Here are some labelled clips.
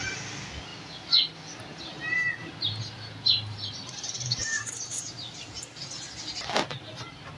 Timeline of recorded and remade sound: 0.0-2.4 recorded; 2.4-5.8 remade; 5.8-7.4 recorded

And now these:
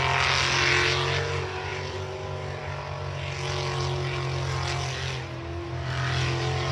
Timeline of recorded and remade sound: 0.0-6.7 recorded

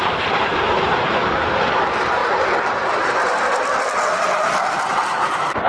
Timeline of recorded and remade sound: 0.0-2.2 remade; 2.2-5.7 recorded

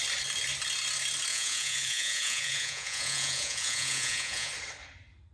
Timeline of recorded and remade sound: 0.0-1.3 recorded; 1.3-4.5 remade; 4.5-5.3 recorded

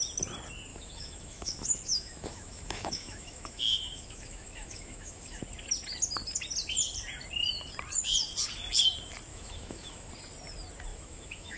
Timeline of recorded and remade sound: 0.0-0.7 recorded; 0.7-5.4 remade; 5.4-9.3 recorded; 9.3-10.1 remade; 10.1-10.9 recorded; 10.9-11.6 remade